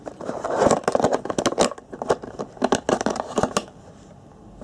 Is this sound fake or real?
real